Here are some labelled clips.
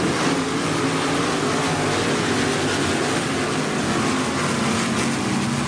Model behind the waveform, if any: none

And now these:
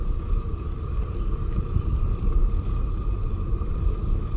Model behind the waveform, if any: vocoder, BigVGAN v2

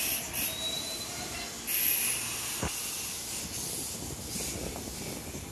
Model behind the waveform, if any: none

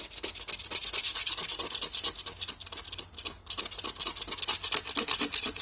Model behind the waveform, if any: none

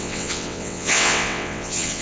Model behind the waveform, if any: vocoder, WaveNeXt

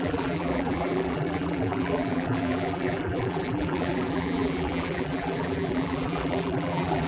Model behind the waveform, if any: vocoder, BigVGAN v2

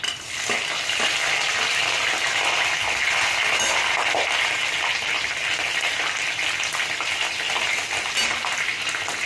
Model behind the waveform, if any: none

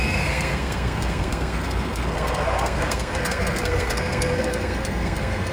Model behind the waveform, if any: codec, SNAC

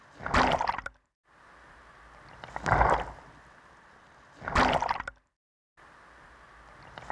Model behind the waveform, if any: none